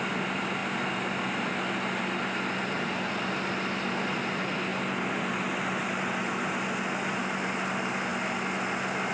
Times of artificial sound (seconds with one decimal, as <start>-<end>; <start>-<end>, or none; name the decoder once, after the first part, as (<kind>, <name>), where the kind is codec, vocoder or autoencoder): none

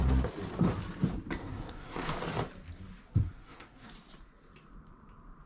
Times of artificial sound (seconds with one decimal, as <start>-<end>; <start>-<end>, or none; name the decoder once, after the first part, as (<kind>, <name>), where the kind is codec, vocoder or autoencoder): 1.4-2.0 (codec, SNAC); 3.1-3.9